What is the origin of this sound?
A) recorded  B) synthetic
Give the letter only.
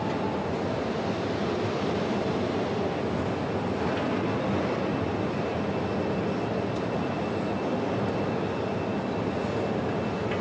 A